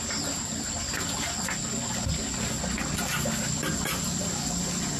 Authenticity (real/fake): real